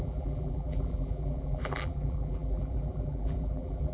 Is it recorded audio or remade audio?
remade